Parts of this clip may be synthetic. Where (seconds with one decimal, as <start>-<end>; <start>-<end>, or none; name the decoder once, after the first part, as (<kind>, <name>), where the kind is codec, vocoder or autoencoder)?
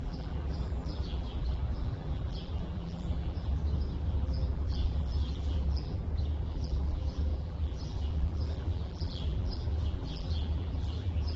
0.0-3.6 (vocoder, BigVGAN v2); 4.1-6.0; 6.5-11.4